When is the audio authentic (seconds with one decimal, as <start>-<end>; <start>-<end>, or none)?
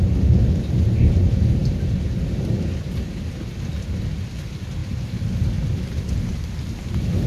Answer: 0.0-4.8; 6.1-7.3